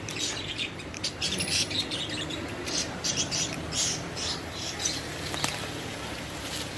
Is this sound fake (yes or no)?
yes